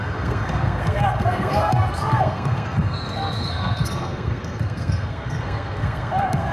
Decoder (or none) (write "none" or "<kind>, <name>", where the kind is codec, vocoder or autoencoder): codec, SNAC